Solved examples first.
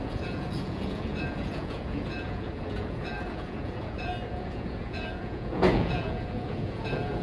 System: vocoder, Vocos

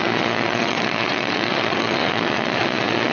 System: vocoder, Vocos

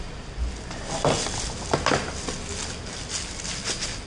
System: none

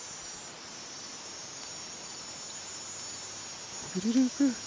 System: none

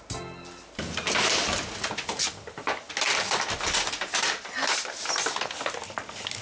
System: none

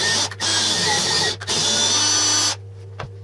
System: none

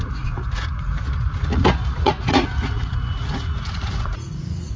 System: vocoder, Vocos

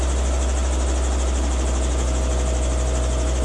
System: none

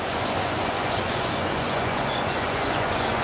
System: vocoder, Vocos